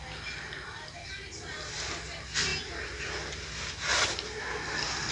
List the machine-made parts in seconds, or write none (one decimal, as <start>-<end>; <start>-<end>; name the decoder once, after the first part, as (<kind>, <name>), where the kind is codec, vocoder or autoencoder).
none